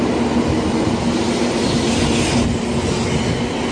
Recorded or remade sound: recorded